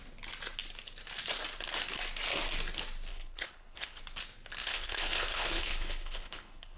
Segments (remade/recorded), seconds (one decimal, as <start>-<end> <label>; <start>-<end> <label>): 0.0-3.1 recorded; 3.1-4.0 remade; 4.0-4.6 recorded; 4.6-6.8 remade